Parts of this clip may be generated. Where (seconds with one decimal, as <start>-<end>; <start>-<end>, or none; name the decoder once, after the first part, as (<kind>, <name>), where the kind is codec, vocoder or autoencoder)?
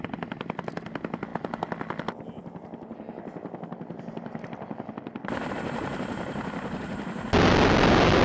none